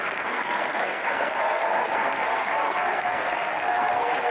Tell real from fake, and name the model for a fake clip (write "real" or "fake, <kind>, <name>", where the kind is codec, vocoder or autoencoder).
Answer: fake, codec, SNAC